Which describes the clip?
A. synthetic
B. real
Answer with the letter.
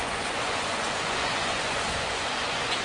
A